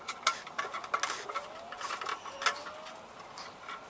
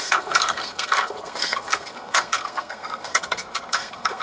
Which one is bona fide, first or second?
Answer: first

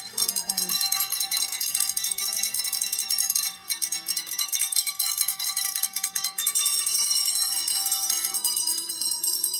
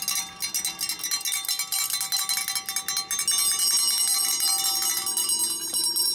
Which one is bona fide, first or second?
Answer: second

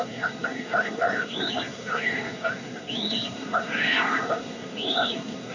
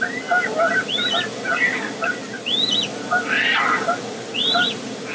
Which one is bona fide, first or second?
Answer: second